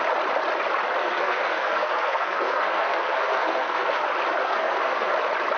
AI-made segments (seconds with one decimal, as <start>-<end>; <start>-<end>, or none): 1.0-4.0; 4.4-5.1